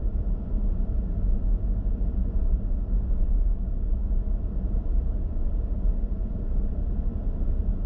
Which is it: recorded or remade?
recorded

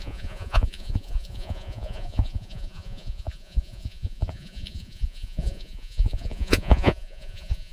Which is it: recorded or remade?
remade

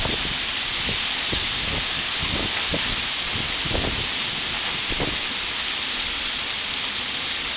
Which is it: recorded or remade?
recorded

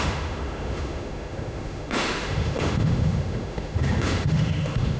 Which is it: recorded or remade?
remade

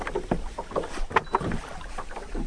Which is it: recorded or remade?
recorded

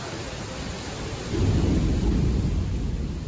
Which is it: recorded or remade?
recorded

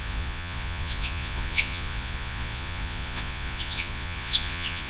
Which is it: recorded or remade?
remade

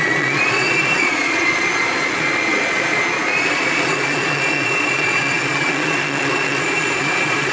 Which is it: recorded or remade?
remade